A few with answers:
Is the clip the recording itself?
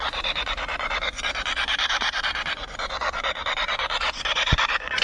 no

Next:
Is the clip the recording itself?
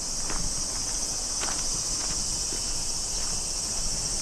yes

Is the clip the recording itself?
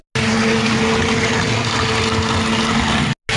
yes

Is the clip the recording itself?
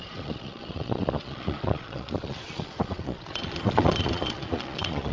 no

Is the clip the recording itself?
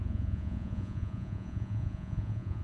no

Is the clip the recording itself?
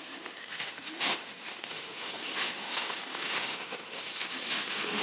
no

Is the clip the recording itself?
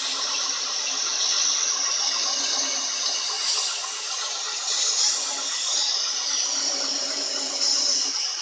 yes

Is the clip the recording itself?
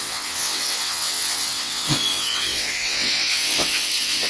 no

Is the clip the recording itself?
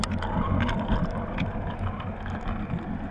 yes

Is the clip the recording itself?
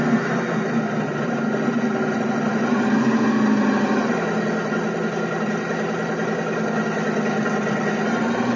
yes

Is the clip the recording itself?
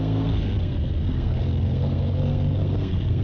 no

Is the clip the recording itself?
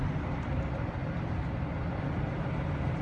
yes